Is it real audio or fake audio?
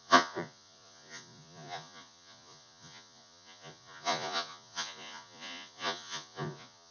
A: fake